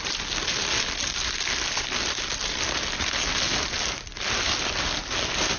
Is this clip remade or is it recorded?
recorded